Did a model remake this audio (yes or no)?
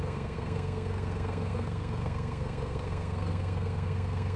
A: yes